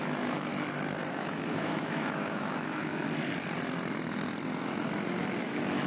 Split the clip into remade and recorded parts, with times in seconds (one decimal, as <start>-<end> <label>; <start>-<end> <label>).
0.0-0.5 remade; 0.5-1.1 recorded; 1.1-3.0 remade; 3.0-5.4 recorded; 5.4-5.9 remade

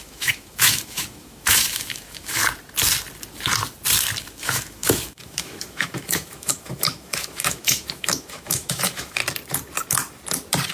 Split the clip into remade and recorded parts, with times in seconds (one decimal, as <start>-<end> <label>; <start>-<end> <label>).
0.0-2.4 remade; 2.4-4.2 recorded; 4.2-9.2 remade; 9.2-10.7 recorded

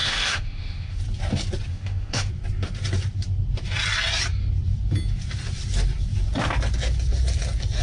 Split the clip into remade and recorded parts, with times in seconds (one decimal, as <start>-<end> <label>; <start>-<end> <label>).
0.0-1.0 remade; 1.0-1.7 recorded; 1.7-2.3 remade; 2.3-7.8 recorded

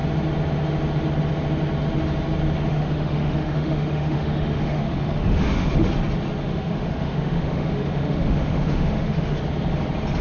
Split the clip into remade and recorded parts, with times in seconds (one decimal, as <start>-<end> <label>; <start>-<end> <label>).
0.0-2.7 recorded; 2.7-5.9 remade; 5.9-6.4 recorded; 6.4-9.4 remade; 9.4-10.2 recorded

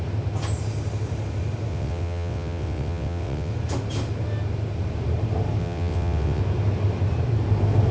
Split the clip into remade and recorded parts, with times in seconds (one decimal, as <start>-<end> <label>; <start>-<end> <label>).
0.0-1.7 recorded; 1.7-3.5 remade; 3.5-5.6 recorded; 5.6-6.4 remade; 6.4-7.9 recorded

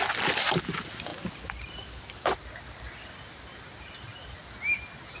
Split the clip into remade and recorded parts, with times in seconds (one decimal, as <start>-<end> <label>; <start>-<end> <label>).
0.0-5.2 recorded

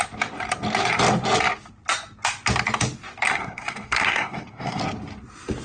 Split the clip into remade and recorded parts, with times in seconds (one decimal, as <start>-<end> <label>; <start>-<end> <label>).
0.0-3.3 recorded; 3.3-4.8 remade; 4.8-5.6 recorded